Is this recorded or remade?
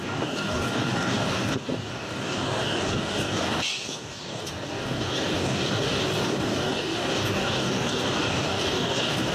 remade